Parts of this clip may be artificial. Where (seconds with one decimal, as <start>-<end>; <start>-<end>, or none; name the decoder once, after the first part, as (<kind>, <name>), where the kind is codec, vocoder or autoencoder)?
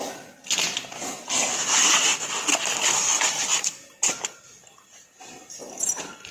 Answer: 3.1-5.6 (vocoder, BigVGAN v2)